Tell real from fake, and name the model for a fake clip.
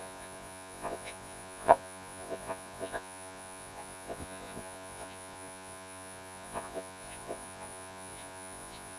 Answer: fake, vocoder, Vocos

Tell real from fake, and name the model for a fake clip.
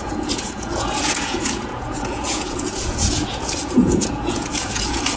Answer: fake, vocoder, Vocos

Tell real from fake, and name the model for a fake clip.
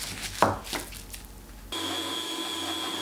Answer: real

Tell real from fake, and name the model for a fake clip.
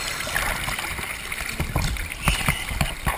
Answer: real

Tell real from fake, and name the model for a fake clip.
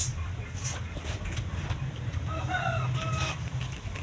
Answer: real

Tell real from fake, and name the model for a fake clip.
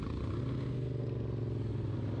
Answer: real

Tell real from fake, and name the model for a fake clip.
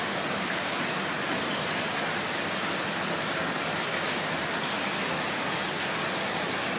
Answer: real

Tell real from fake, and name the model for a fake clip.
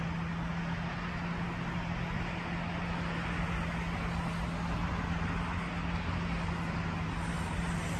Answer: real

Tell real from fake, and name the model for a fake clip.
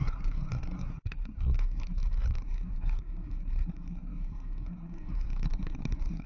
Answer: fake, codec, SNAC